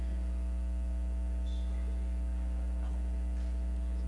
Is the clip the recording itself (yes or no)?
yes